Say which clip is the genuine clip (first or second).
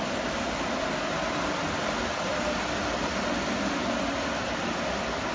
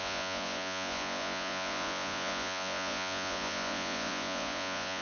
first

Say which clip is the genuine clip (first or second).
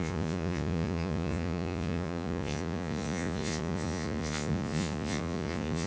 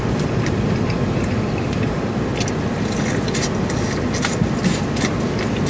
second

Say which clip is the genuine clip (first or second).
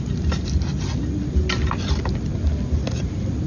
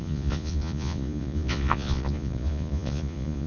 first